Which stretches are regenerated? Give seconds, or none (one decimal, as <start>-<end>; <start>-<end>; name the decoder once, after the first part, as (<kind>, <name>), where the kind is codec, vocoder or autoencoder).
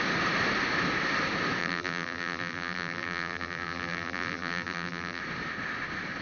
1.6-5.2 (vocoder, BigVGAN v2)